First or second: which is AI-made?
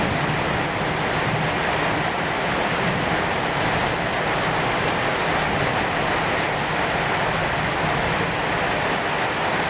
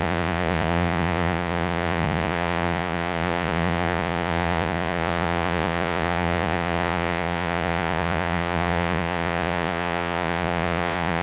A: second